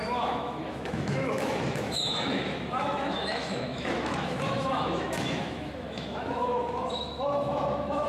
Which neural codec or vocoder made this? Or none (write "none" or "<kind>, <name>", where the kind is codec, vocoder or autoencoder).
autoencoder, DAC-VAE